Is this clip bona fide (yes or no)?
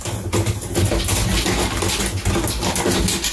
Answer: yes